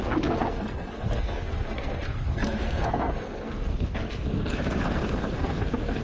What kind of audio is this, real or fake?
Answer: fake